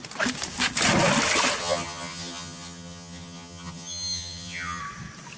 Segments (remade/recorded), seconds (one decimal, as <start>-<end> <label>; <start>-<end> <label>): 0.0-1.6 recorded; 1.6-4.8 remade; 4.8-5.4 recorded